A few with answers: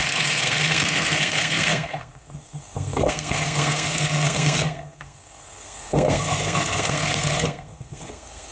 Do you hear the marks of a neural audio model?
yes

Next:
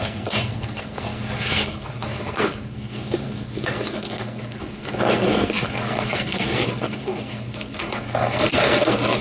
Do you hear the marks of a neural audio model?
yes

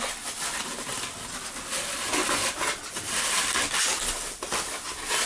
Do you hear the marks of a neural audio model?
no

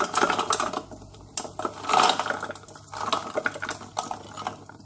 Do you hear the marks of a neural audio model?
no